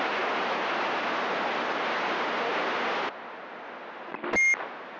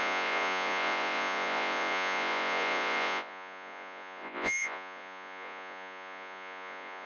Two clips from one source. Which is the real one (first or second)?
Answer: first